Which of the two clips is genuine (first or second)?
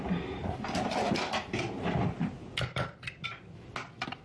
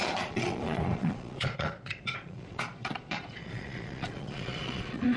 first